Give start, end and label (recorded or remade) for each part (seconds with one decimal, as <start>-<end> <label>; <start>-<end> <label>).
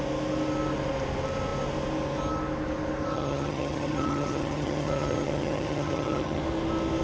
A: 0.0-3.1 recorded; 3.1-6.4 remade; 6.4-7.0 recorded